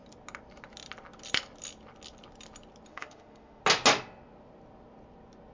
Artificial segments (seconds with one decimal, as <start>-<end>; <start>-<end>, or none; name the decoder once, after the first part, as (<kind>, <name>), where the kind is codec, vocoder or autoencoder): 2.9-3.6 (autoencoder, DAC-VAE)